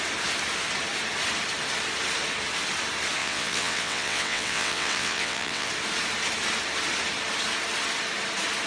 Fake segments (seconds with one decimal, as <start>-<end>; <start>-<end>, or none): 3.2-5.7

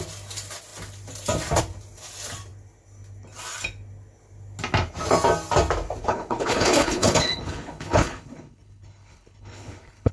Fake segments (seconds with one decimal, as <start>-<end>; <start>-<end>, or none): 6.0-10.1

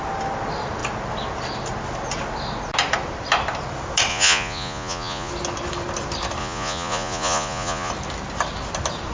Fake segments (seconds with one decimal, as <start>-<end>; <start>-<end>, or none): 4.1-5.3; 6.4-7.9

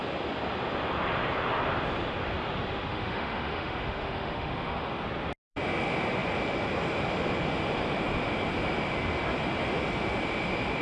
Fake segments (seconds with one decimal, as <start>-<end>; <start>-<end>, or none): 2.9-4.9

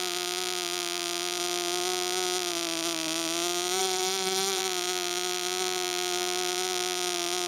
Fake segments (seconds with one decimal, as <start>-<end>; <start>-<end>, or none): 3.8-4.6